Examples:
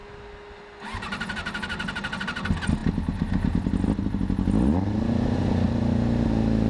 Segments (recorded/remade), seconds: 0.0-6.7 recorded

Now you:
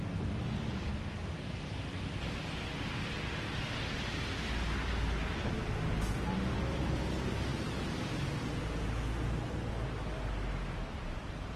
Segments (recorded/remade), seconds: 0.0-11.6 recorded

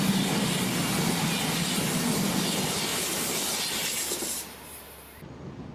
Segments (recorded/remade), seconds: 0.0-2.9 recorded; 2.9-5.7 remade

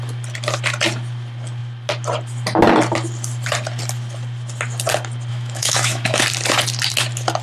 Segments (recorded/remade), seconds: 0.0-5.3 recorded; 5.3-6.2 remade; 6.2-7.4 recorded

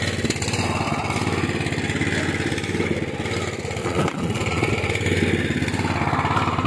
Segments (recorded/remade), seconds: 0.0-3.8 recorded; 3.8-4.7 remade; 4.7-6.7 recorded

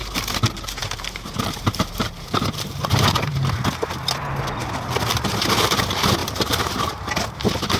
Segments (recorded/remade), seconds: 0.0-0.8 recorded; 0.8-3.6 remade; 3.6-6.2 recorded; 6.2-7.1 remade; 7.1-7.8 recorded